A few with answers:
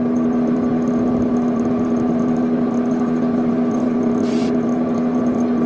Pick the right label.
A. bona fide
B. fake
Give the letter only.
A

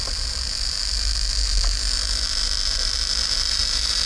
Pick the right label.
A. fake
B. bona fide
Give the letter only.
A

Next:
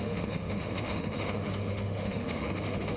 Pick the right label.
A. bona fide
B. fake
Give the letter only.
B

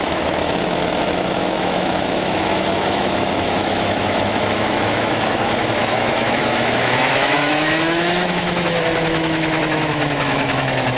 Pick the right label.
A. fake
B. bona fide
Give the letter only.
A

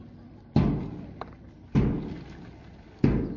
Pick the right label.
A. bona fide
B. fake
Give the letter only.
A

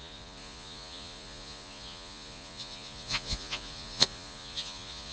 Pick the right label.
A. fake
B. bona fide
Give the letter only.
A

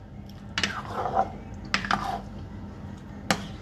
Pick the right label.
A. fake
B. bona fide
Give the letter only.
B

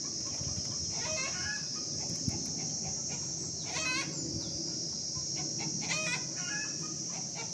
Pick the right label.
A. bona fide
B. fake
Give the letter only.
A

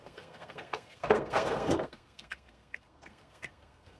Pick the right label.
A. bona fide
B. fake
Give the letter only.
B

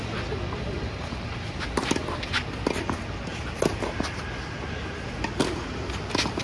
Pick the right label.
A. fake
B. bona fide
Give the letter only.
B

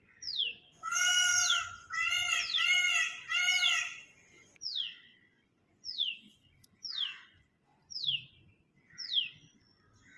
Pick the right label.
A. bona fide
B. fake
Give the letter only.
B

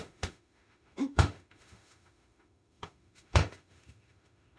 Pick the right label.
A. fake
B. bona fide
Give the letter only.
A